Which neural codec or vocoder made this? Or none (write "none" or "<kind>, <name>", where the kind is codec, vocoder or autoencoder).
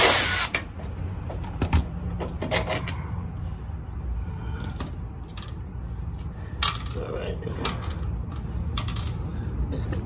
none